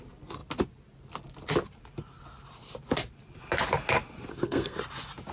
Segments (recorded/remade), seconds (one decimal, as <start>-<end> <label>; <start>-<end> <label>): 0.0-4.3 recorded; 4.3-4.8 remade; 4.8-5.3 recorded